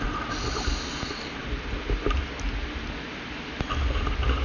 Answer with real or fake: real